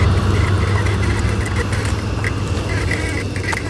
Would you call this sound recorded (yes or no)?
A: yes